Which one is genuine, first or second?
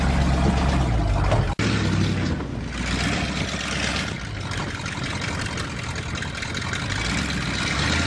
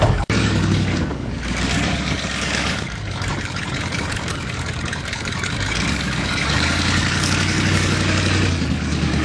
first